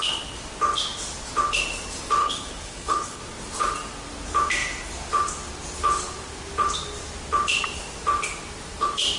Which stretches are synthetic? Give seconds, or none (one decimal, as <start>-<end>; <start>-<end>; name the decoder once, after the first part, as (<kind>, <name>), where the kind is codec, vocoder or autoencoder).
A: 2.2-3.2 (codec, HILCodec)